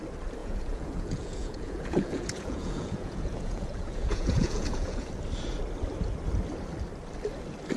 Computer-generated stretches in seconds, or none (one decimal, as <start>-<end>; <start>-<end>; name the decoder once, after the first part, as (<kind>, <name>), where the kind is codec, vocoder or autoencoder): 0.4-5.1 (vocoder, Vocos)